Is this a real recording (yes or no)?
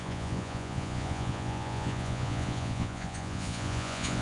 no